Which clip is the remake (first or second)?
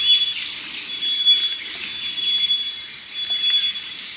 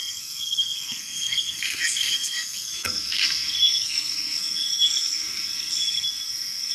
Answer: second